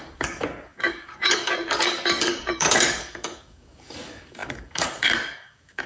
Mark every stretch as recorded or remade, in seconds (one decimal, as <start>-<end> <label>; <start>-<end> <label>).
0.0-5.9 remade